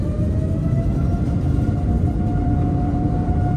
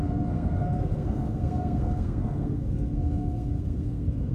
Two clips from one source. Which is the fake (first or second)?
second